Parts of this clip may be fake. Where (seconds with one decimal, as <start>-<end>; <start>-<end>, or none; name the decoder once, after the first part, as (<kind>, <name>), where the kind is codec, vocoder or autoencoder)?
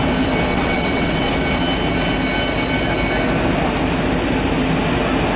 0.5-1.3 (vocoder, WaveNeXt)